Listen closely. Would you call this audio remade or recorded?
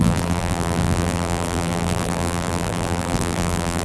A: remade